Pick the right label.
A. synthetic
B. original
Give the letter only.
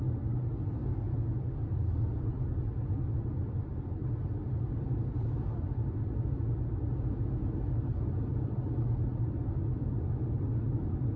B